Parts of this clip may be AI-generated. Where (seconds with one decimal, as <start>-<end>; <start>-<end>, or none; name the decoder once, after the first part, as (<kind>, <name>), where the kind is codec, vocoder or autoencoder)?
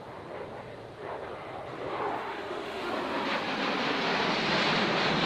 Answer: 2.2-2.9 (autoencoder, DAC-VAE)